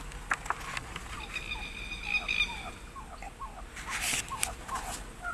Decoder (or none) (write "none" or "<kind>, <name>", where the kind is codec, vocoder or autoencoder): none